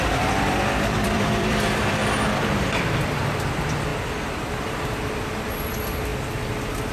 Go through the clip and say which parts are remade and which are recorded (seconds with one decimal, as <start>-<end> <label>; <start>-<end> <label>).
0.0-2.0 remade; 2.0-3.4 recorded; 3.4-3.9 remade; 3.9-4.5 recorded; 4.5-6.1 remade; 6.1-6.9 recorded

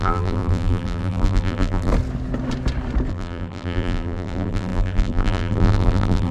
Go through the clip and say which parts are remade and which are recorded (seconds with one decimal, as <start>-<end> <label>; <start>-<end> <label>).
0.0-1.9 remade; 1.9-3.1 recorded; 3.1-6.3 remade

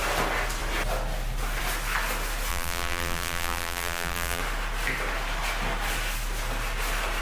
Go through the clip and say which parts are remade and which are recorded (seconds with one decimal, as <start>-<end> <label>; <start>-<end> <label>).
0.0-2.5 recorded; 2.5-4.4 remade; 4.4-7.2 recorded

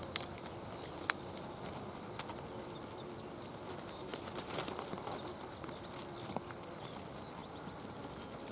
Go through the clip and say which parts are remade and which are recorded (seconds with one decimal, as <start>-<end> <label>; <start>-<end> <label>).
0.0-4.1 recorded; 4.1-4.7 remade; 4.7-5.3 recorded; 5.3-5.9 remade; 5.9-7.4 recorded; 7.4-8.0 remade; 8.0-8.5 recorded

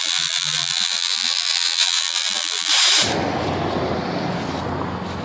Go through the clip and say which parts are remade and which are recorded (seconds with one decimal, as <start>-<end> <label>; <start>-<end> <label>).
0.0-2.7 remade; 2.7-5.2 recorded

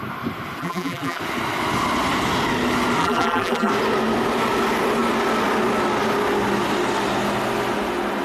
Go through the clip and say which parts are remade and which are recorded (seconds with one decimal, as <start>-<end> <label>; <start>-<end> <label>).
0.0-0.6 recorded; 0.6-1.2 remade; 1.2-3.0 recorded; 3.0-3.7 remade; 3.7-8.2 recorded

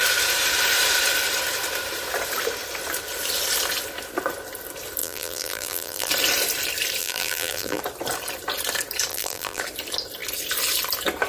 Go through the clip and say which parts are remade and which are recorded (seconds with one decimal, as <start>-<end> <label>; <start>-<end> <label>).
0.0-5.0 recorded; 5.0-6.1 remade; 6.1-7.0 recorded; 7.0-7.8 remade; 7.8-9.1 recorded; 9.1-9.6 remade; 9.6-11.3 recorded